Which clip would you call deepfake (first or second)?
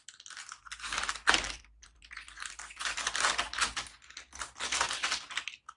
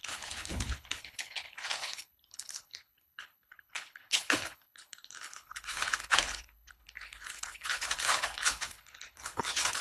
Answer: second